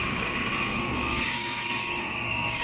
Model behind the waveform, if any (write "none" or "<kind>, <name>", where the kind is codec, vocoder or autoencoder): codec, DAC